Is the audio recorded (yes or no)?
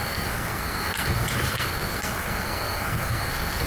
no